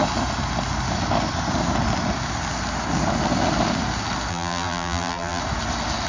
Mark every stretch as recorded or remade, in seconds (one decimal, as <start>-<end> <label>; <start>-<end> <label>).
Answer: 0.0-4.3 recorded; 4.3-5.4 remade; 5.4-6.1 recorded